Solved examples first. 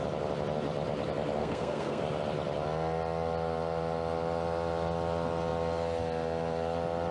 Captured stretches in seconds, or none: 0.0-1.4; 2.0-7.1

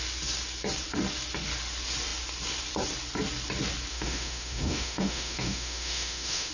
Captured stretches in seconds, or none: 0.0-3.9

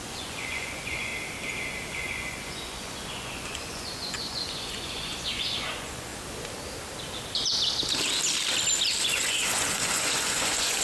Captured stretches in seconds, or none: 1.1-1.9; 6.1-9.0

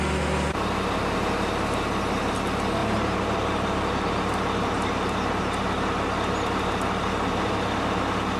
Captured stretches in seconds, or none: 0.0-2.8; 4.3-8.4

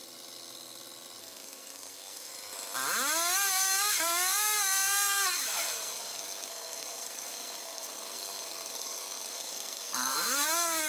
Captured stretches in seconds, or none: 0.0-1.2; 2.3-3.5

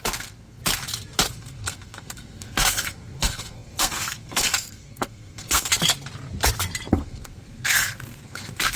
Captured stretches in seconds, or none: 0.6-1.3; 5.7-6.9

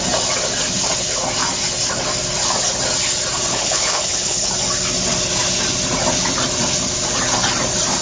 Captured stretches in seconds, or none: 0.0-3.5; 4.5-8.0